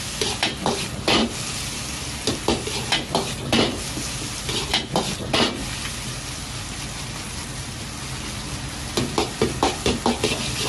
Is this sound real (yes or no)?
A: yes